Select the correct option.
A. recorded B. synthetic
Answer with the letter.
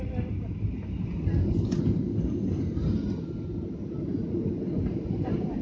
A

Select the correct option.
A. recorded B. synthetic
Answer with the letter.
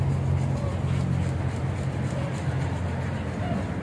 A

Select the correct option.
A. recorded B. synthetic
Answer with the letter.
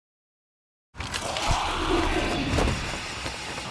A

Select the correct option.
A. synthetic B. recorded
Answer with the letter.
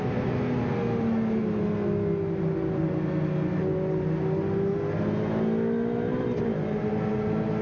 B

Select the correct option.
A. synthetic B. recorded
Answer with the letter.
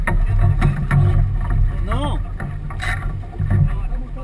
B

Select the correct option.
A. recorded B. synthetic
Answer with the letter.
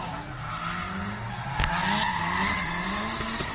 A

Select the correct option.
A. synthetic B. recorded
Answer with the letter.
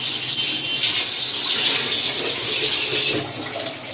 B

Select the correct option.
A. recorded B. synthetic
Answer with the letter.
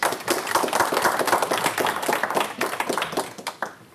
A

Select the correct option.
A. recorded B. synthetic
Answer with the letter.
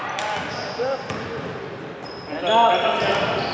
A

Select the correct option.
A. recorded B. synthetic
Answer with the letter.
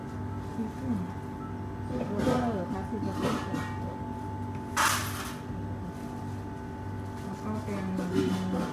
A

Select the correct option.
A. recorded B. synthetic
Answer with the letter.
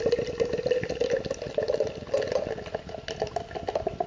A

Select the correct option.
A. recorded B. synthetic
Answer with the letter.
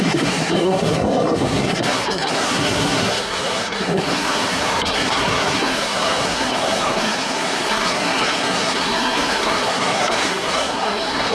B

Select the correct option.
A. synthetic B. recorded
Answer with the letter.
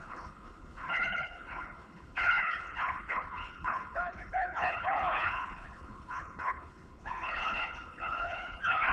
A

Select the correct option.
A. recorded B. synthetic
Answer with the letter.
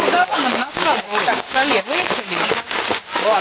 B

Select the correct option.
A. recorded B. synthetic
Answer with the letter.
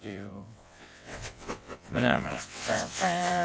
B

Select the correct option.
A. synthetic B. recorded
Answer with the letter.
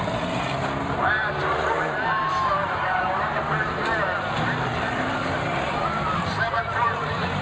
A